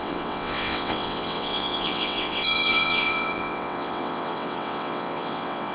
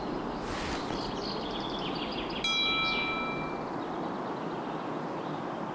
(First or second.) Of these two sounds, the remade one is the first